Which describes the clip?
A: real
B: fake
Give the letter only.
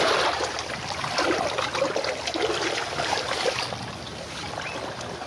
A